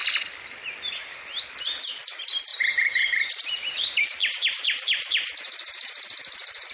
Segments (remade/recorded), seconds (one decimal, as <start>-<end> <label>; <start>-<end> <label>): 0.0-2.5 recorded; 2.5-6.7 remade